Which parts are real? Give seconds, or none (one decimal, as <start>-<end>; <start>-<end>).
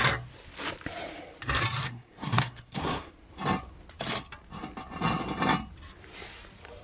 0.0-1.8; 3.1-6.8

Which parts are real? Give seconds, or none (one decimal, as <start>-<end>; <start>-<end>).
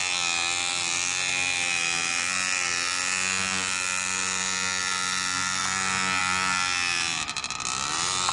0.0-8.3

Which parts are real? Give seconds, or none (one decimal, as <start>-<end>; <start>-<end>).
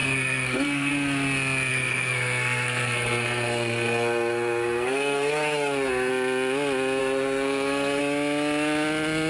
0.9-1.7; 6.1-7.0; 8.0-9.3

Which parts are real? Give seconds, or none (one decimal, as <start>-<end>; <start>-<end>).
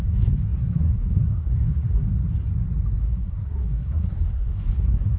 2.2-3.0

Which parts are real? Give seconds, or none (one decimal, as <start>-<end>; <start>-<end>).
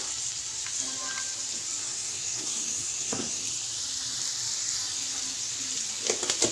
0.0-1.8; 3.4-6.5